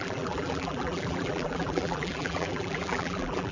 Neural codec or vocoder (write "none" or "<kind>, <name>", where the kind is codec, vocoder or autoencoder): vocoder, BigVGAN v2